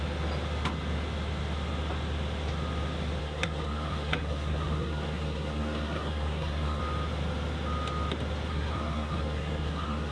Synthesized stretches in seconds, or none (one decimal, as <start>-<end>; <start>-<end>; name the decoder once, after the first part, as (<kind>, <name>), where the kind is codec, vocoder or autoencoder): 3.2-6.8 (codec, SNAC); 8.5-10.1